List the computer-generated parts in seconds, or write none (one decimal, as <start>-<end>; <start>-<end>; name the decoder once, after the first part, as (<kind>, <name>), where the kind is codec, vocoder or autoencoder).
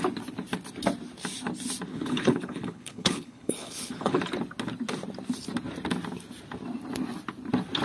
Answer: 1.9-4.2 (codec, HILCodec)